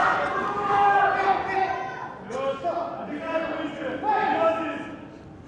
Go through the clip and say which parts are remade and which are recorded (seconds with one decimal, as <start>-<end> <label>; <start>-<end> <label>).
0.0-1.1 remade; 1.1-5.5 recorded